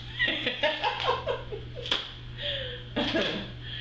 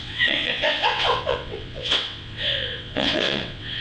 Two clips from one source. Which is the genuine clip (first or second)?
first